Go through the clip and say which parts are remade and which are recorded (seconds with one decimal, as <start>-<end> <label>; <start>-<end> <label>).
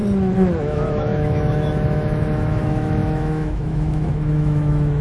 0.0-0.6 recorded; 0.6-5.0 remade